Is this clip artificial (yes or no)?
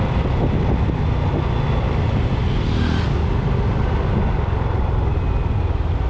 no